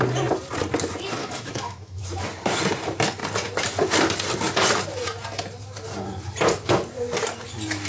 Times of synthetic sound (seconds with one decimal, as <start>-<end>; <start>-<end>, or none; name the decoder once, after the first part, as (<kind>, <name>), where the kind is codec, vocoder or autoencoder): 1.2-2.0 (autoencoder, DAC-VAE)